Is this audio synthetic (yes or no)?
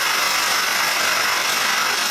no